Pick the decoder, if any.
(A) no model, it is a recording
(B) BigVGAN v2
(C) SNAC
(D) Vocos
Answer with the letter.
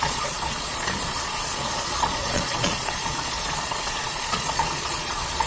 D